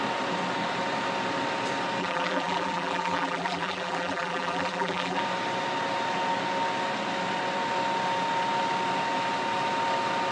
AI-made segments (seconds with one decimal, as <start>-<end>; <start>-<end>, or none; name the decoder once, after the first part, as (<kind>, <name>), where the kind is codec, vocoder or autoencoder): 2.0-5.2 (vocoder, BigVGAN v2)